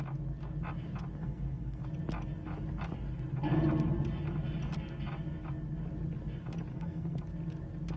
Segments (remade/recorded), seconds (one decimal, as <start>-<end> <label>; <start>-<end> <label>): 0.0-1.2 recorded; 1.2-1.8 remade; 1.8-6.7 recorded; 6.7-7.2 remade; 7.2-8.0 recorded